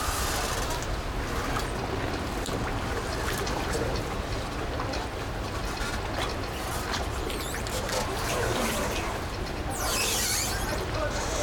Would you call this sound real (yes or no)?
yes